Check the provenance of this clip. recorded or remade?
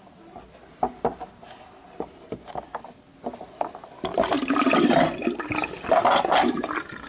recorded